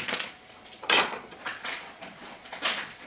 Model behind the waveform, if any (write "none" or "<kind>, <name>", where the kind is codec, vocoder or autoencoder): vocoder, Vocos